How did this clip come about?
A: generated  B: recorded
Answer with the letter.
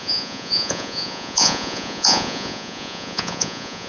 A